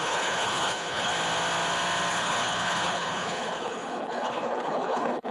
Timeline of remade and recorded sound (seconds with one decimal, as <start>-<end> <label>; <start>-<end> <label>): 0.0-1.1 remade; 1.1-2.1 recorded; 2.1-5.3 remade